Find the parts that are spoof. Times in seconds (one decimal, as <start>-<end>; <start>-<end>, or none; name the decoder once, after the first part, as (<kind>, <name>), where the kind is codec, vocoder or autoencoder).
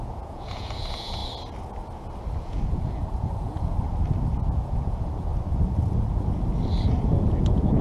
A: 0.0-1.2 (vocoder, Vocos); 2.4-3.7; 4.4-5.3; 6.9-7.8